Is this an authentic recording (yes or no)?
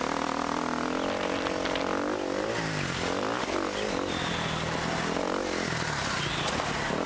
yes